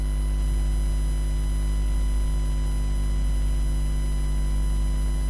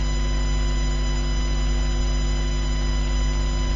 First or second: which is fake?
second